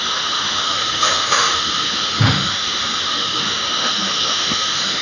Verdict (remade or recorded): remade